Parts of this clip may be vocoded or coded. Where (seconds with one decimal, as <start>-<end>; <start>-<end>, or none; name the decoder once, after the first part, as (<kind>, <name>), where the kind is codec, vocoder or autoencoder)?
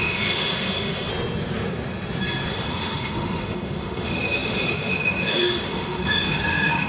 0.0-1.1 (autoencoder, DAC-VAE); 2.5-6.9